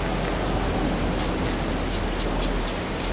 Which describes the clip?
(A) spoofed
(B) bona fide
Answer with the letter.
B